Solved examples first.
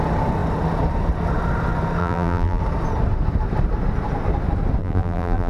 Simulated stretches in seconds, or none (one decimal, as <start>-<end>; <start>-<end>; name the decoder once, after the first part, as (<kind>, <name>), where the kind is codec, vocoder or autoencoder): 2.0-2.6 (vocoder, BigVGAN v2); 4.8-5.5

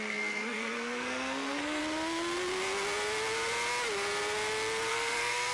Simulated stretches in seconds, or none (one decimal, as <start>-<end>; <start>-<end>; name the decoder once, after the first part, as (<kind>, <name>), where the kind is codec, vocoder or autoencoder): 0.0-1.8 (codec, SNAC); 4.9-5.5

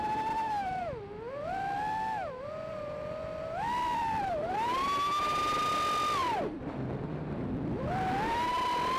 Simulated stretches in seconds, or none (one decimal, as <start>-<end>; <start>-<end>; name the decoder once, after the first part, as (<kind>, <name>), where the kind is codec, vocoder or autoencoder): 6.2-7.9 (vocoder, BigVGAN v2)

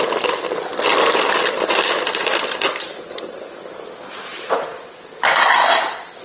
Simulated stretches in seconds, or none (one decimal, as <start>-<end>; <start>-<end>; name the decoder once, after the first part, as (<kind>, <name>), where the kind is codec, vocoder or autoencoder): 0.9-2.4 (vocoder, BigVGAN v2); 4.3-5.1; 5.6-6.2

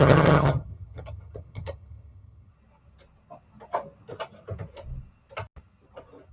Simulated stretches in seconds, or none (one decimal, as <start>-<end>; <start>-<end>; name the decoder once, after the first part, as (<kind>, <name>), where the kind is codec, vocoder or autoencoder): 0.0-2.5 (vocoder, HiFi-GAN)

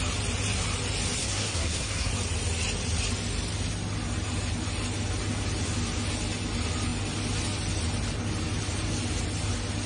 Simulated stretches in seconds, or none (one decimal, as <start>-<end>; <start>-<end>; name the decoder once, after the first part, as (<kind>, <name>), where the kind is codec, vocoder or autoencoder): 1.2-2.1 (codec, SNAC)

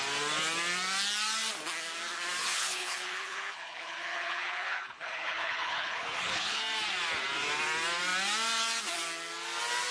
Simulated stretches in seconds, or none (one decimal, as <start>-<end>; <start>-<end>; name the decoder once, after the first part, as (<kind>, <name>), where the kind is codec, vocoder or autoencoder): 2.4-6.6 (codec, HILCodec)

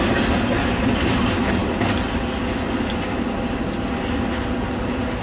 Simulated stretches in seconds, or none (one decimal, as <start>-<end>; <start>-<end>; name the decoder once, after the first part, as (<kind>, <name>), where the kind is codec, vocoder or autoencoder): none